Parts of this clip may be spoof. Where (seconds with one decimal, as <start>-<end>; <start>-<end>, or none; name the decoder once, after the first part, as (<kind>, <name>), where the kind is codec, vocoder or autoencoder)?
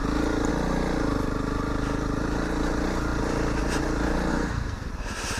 4.3-4.9 (codec, SNAC)